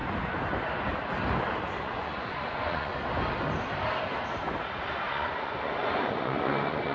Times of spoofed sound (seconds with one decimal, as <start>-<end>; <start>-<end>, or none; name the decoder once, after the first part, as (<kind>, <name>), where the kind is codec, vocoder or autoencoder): 1.8-2.9 (vocoder, Vocos); 5.1-6.9